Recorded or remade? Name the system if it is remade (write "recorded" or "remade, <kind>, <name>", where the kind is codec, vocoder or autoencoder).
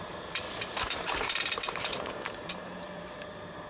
remade, vocoder, BigVGAN v2